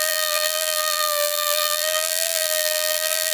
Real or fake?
fake